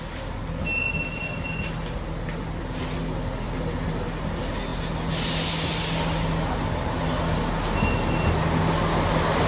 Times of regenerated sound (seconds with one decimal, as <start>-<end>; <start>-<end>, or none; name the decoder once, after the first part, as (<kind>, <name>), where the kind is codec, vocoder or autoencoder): none